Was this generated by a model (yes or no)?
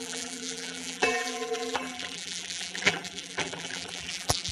yes